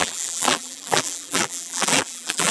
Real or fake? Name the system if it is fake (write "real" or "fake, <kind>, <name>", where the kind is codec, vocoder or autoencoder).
fake, vocoder, BigVGAN v2